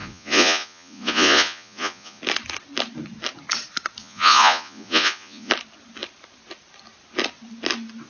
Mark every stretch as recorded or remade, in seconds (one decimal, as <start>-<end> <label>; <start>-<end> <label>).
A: 0.0-2.2 remade; 2.2-4.0 recorded; 4.0-5.5 remade; 5.5-8.1 recorded